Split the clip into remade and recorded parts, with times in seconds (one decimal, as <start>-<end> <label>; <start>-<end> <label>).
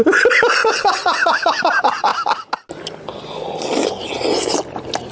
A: 0.0-0.6 recorded; 0.6-1.6 remade; 1.6-5.1 recorded